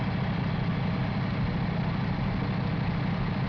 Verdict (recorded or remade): recorded